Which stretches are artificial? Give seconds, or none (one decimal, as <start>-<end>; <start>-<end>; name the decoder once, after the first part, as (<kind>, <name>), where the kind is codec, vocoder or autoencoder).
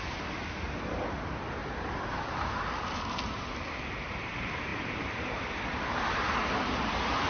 1.6-2.5 (vocoder, BigVGAN v2); 4.7-5.4